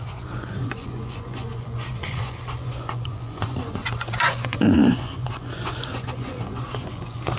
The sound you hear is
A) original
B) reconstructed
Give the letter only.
B